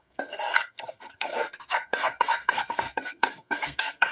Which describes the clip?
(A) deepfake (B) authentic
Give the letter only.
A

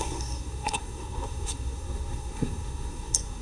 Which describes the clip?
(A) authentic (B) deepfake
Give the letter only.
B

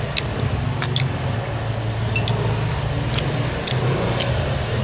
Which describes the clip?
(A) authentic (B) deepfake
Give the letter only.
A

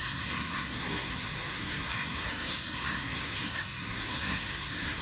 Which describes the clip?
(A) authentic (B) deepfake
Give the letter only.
B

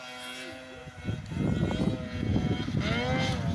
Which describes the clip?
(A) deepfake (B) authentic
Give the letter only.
B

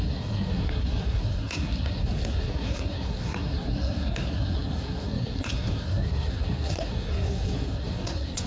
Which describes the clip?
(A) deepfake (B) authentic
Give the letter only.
A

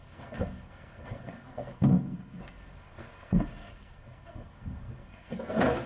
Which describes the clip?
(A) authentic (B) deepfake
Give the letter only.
B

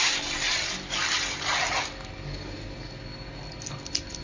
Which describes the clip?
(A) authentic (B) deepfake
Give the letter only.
A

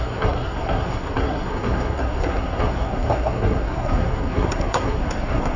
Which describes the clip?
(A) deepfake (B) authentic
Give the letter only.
A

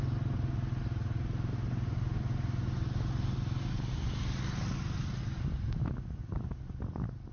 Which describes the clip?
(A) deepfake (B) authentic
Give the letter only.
B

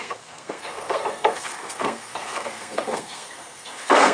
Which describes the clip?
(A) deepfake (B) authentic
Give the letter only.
A